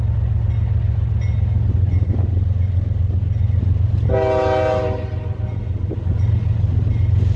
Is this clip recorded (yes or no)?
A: yes